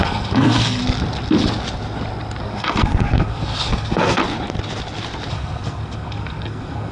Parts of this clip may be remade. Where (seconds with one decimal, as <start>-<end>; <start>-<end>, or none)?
0.0-0.8; 2.4-4.2; 5.3-6.9